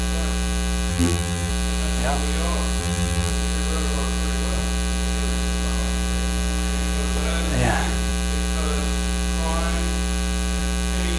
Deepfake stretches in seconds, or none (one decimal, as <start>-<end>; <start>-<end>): 0.9-1.5; 2.8-3.3